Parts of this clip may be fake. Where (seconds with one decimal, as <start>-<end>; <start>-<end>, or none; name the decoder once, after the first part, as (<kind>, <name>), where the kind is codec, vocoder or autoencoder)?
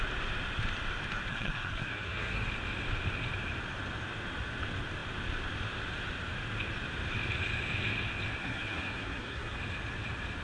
1.3-2.5 (codec, SNAC); 8.4-9.6